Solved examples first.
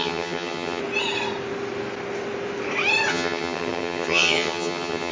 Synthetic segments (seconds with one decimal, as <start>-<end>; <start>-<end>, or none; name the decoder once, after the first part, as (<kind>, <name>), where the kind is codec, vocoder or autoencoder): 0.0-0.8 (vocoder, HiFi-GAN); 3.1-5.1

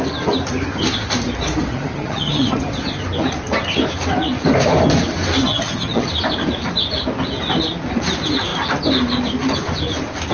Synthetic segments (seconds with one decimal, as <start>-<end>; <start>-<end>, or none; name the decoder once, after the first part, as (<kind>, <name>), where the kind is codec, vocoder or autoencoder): 1.7-2.6 (vocoder, HiFi-GAN); 5.4-6.1

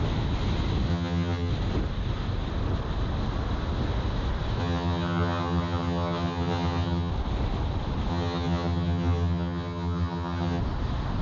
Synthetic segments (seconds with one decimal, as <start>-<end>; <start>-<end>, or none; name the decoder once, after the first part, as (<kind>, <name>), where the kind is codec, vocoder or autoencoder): 0.9-1.5 (vocoder, HiFi-GAN); 4.6-7.1; 8.1-10.6